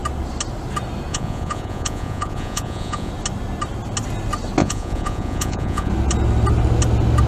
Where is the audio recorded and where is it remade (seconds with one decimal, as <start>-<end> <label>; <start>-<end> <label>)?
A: 0.0-1.1 recorded; 1.1-3.1 remade; 3.1-4.6 recorded; 4.6-5.9 remade; 5.9-7.3 recorded